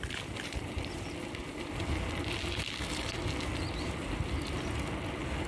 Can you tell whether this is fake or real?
real